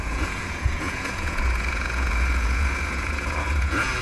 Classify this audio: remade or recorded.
remade